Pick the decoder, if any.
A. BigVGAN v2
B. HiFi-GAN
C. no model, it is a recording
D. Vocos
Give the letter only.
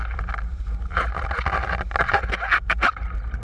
C